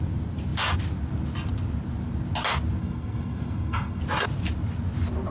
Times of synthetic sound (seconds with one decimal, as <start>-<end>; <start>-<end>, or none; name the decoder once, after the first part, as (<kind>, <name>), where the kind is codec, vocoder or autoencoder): 2.8-4.0 (codec, SNAC)